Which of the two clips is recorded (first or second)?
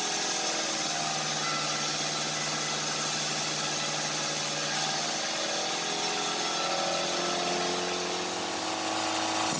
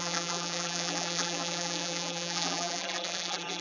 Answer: first